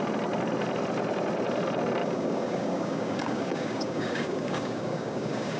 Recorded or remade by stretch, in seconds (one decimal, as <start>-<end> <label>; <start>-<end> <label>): 0.0-2.0 recorded; 2.0-5.6 remade